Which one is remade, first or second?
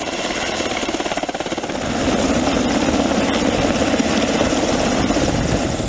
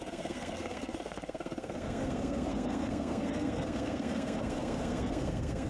second